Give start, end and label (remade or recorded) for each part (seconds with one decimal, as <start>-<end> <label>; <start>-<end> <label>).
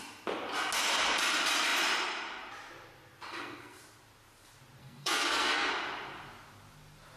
0.0-3.3 recorded; 3.3-3.8 remade; 3.8-4.8 recorded; 4.8-5.7 remade; 5.7-7.2 recorded